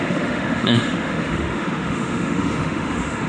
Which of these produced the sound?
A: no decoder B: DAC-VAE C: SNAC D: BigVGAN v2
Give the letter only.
B